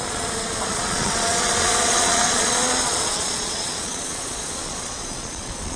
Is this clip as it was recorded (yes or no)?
no